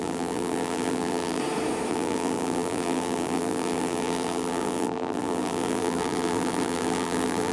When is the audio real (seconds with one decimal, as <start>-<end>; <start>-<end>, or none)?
1.4-1.9

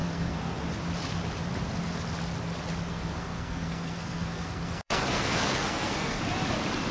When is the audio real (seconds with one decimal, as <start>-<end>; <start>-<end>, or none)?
0.6-2.9; 6.2-6.9

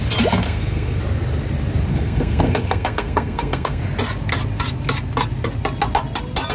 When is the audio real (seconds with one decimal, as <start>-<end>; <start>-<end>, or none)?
0.0-0.4; 1.0-1.9; 3.8-6.5

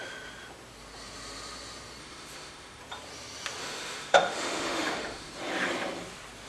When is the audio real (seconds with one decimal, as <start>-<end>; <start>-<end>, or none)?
0.0-2.0; 2.8-3.6; 5.3-6.5

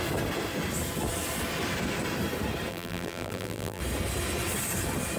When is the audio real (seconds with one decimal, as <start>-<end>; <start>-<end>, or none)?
0.0-2.7; 3.8-5.2